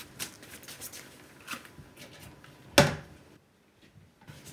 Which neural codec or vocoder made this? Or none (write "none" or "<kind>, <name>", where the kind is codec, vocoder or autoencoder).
none